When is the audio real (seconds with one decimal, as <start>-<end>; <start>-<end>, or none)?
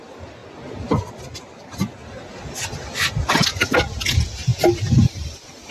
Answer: 0.0-5.7